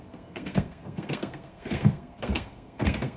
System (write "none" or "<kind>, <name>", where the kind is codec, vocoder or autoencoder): codec, SNAC